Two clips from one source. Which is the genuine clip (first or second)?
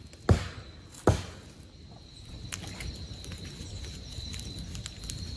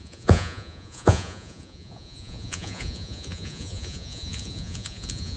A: first